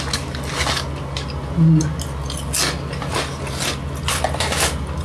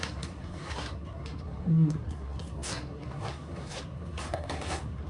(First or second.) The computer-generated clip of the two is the second